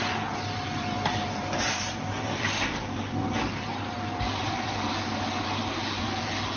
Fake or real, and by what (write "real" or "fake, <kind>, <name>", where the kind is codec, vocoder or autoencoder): fake, vocoder, BigVGAN v2